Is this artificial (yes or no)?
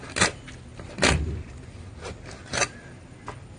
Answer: no